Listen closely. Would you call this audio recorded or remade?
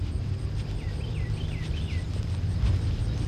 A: remade